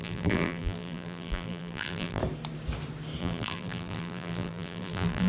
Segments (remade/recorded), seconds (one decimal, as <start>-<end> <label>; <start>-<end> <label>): 0.0-2.2 remade; 2.2-3.2 recorded; 3.2-5.3 remade